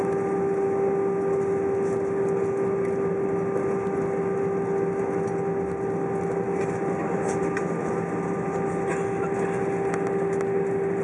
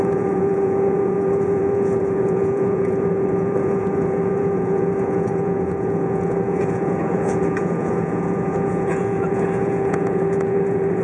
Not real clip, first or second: second